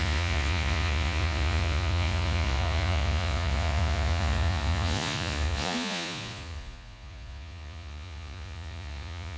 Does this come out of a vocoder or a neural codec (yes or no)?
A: yes